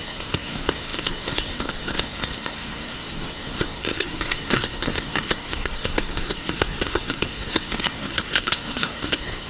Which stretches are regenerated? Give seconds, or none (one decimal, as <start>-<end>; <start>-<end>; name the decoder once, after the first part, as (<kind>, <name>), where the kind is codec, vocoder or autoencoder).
0.0-9.5 (codec, SNAC)